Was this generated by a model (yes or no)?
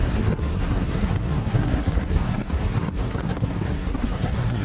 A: yes